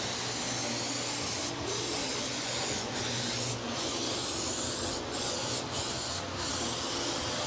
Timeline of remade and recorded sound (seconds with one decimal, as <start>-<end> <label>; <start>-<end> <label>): 0.0-2.0 recorded; 2.0-6.5 remade; 6.5-7.5 recorded